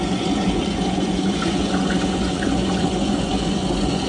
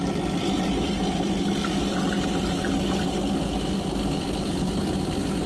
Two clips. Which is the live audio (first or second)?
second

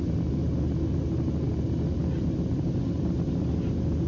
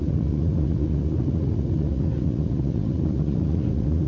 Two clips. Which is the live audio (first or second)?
first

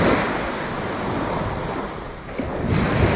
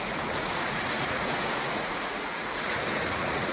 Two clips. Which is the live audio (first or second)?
first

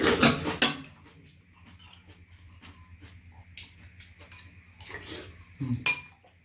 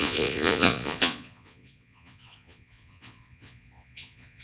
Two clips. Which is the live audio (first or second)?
first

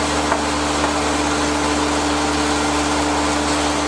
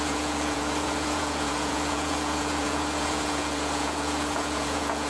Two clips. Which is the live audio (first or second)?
first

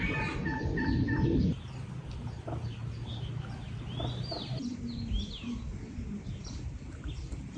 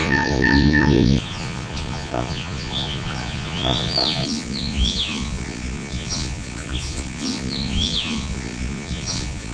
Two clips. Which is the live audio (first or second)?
first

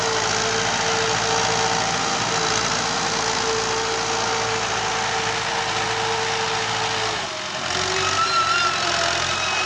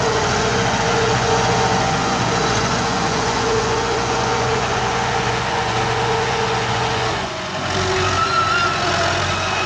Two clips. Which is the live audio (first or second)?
first